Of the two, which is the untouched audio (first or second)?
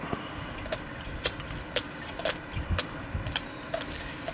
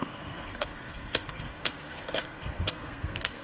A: first